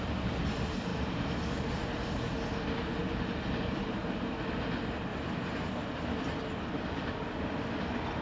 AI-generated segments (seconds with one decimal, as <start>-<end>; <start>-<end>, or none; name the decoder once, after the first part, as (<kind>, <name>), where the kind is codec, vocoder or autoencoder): 3.0-4.0 (vocoder, BigVGAN v2)